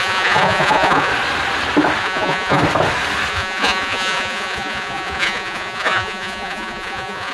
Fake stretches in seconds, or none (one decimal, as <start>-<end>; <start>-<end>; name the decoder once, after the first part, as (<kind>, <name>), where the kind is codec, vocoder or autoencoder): 0.0-1.1 (vocoder, Vocos); 2.0-2.6; 3.3-7.3